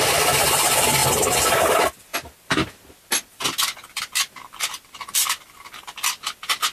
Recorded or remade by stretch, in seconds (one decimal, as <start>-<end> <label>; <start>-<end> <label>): 0.0-6.7 recorded